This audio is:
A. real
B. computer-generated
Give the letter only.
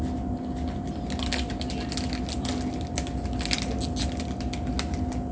A